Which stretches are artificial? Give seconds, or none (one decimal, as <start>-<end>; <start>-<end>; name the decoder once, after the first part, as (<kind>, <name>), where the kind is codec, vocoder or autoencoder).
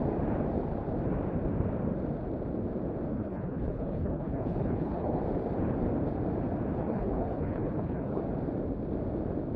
3.1-5.2 (codec, HILCodec); 6.8-8.2